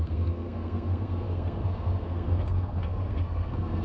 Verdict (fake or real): fake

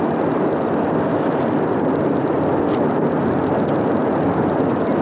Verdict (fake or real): real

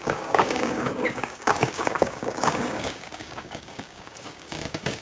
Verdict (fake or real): fake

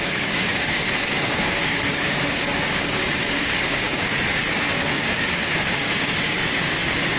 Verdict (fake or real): fake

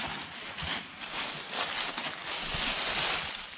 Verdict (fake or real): real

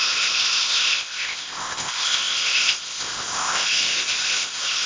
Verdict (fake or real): fake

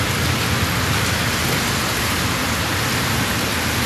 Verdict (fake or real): real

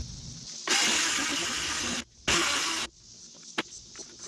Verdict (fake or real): real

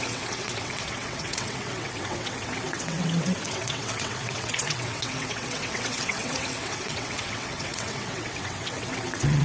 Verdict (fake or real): fake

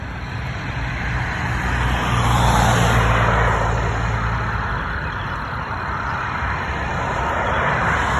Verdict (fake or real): fake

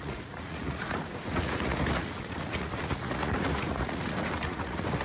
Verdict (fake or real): fake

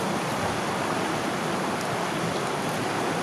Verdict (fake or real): real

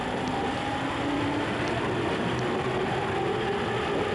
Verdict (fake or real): real